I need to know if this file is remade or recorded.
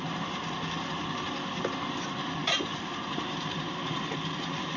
remade